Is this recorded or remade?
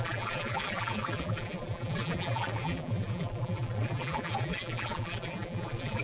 remade